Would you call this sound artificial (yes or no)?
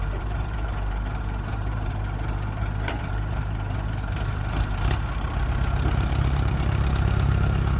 yes